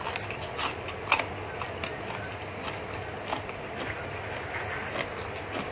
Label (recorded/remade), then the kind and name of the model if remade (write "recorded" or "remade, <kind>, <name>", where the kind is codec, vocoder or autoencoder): recorded